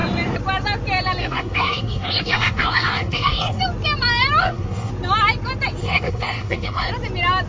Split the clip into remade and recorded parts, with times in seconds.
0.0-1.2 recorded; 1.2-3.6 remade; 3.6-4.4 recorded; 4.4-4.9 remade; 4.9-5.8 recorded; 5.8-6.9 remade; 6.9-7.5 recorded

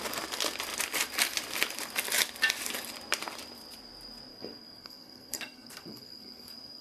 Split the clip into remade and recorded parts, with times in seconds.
0.0-4.3 recorded; 4.3-6.8 remade

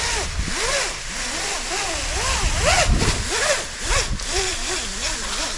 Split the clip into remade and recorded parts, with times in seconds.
0.0-5.6 recorded

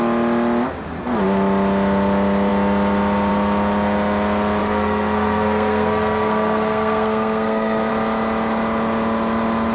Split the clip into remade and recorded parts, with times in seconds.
0.0-4.6 recorded; 4.6-7.9 remade; 7.9-9.7 recorded

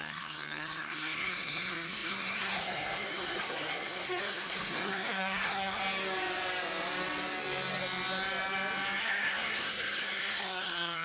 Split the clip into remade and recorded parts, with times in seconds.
0.0-5.8 remade; 5.8-9.0 recorded; 9.0-11.0 remade

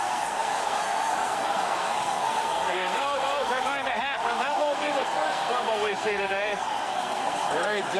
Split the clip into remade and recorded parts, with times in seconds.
0.0-8.0 remade

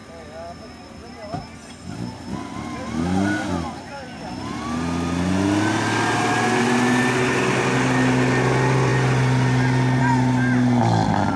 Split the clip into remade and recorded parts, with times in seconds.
0.0-11.4 recorded